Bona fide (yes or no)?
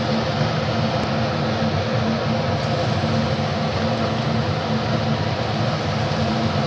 yes